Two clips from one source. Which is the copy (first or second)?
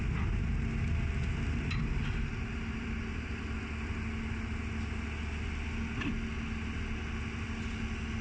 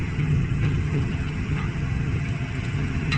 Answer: second